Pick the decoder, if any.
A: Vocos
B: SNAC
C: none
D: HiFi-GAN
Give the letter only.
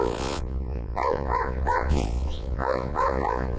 A